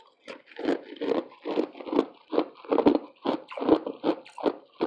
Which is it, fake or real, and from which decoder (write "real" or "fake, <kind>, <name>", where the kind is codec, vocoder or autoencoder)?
real